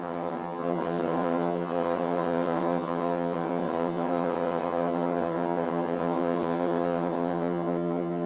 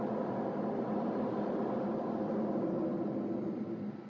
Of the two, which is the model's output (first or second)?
first